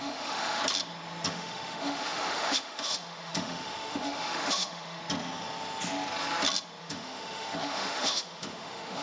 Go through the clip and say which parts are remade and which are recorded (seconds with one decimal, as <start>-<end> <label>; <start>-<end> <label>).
0.0-0.6 remade; 0.6-1.3 recorded; 1.3-5.0 remade; 5.0-6.8 recorded; 6.8-9.0 remade